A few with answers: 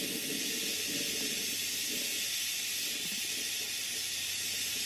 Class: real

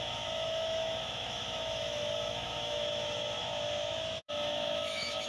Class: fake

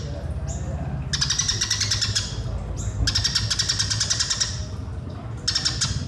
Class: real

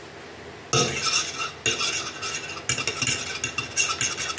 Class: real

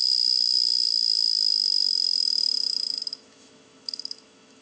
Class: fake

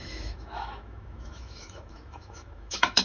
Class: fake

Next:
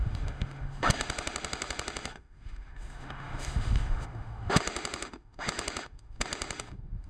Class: fake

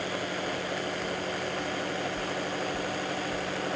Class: real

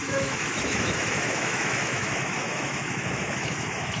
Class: fake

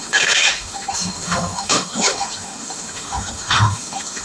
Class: fake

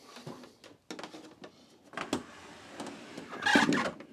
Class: real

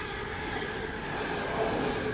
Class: real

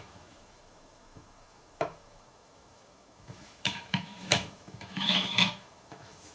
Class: fake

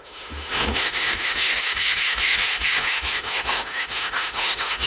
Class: fake